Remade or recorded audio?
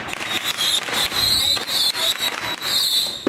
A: recorded